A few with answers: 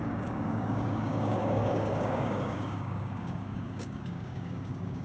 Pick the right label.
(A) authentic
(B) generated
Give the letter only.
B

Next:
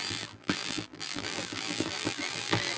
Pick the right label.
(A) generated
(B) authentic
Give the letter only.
A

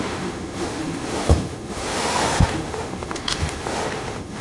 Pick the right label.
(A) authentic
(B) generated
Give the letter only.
B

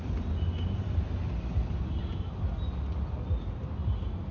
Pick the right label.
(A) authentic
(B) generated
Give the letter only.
A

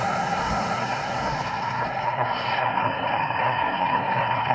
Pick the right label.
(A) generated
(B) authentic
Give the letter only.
A